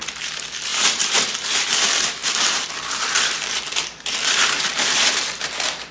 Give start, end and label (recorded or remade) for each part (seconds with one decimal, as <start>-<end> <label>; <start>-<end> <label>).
0.0-0.7 recorded; 0.7-1.7 remade; 1.7-2.2 recorded; 2.2-5.9 remade